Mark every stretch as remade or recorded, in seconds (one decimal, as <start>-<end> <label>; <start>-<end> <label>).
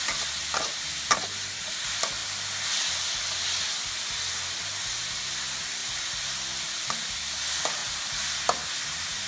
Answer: 0.0-9.3 recorded